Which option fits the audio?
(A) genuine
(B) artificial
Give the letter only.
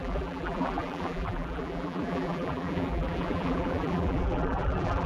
B